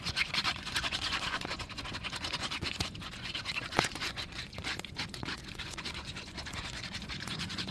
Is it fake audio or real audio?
fake